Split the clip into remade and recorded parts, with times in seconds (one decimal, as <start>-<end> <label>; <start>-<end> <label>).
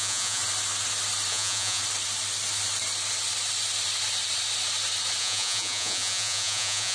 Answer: 0.0-0.4 remade; 0.4-1.3 recorded; 1.3-1.8 remade; 1.8-5.2 recorded; 5.2-6.9 remade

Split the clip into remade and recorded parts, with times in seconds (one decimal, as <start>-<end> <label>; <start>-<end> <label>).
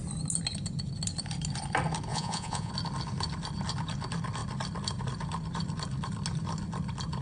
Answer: 0.0-2.1 recorded; 2.1-2.7 remade; 2.7-7.2 recorded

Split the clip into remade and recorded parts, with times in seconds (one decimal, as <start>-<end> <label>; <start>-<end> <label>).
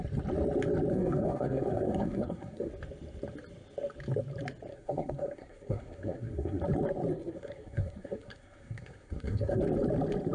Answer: 0.0-0.9 recorded; 0.9-2.7 remade; 2.7-4.7 recorded; 4.7-6.6 remade; 6.6-7.1 recorded; 7.1-9.6 remade; 9.6-10.3 recorded